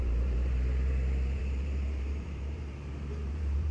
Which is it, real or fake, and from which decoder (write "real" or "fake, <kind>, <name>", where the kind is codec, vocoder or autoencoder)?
fake, vocoder, BigVGAN v2